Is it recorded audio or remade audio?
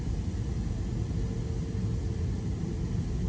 recorded